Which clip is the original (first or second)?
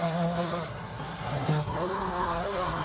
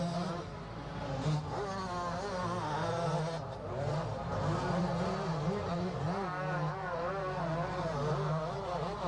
second